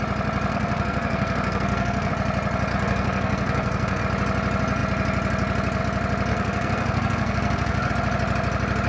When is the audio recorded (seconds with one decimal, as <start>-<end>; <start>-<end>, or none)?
0.0-0.5; 2.1-2.7; 4.0-6.3; 7.9-8.9